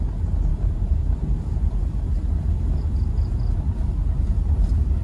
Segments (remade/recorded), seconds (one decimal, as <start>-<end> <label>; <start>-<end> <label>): 0.0-0.5 recorded; 0.5-1.8 remade; 1.8-3.2 recorded; 3.2-4.0 remade; 4.0-5.0 recorded